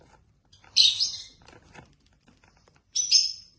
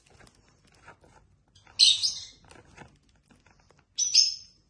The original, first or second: second